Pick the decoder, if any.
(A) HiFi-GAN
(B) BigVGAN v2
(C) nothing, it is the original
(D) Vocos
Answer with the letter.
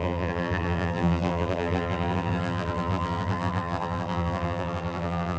B